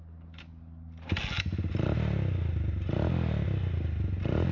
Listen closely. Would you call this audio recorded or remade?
recorded